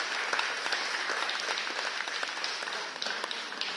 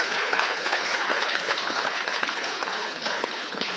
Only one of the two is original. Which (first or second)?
first